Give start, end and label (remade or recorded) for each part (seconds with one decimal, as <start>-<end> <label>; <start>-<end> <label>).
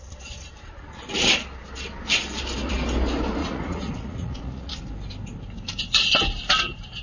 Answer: 0.0-3.4 recorded; 3.4-4.8 remade; 4.8-7.0 recorded